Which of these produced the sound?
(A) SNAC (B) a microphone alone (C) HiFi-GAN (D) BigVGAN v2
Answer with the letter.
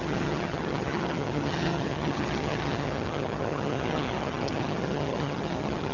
C